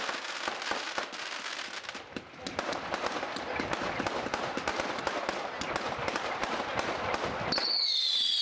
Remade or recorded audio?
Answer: recorded